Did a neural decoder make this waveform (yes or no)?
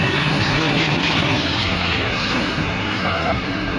yes